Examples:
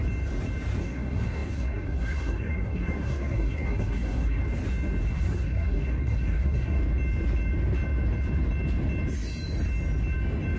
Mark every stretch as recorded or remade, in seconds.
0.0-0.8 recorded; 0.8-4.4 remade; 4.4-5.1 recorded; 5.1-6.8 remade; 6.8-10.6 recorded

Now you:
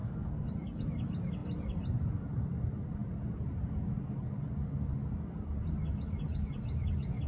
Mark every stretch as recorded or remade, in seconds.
0.0-0.8 remade; 0.8-7.3 recorded

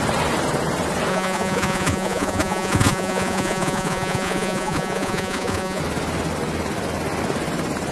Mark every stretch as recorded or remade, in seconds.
0.0-1.1 recorded; 1.1-5.8 remade; 5.8-7.9 recorded

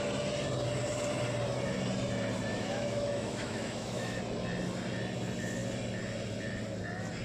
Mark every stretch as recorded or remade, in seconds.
0.0-2.5 recorded; 2.5-4.2 remade; 4.2-7.2 recorded

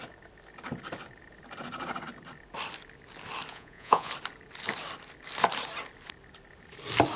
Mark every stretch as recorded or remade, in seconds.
0.0-3.5 recorded; 3.5-4.1 remade; 4.1-7.2 recorded

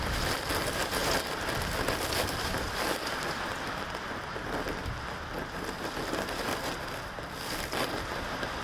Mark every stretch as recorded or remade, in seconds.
0.0-8.6 recorded